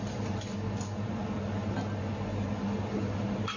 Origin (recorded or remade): recorded